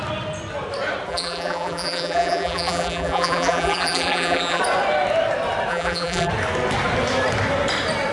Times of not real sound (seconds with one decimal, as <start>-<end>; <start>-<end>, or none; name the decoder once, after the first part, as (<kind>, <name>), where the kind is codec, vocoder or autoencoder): 1.1-4.6 (vocoder, BigVGAN v2); 5.7-6.3